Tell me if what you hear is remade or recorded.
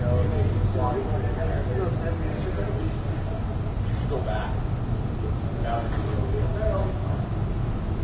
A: recorded